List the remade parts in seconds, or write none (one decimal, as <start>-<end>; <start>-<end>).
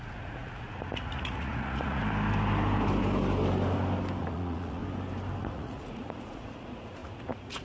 0.0-2.0; 4.2-4.8; 5.4-7.6